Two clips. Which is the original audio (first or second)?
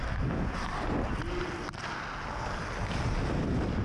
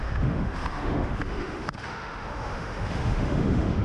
first